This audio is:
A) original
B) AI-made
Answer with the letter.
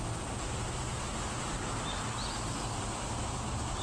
A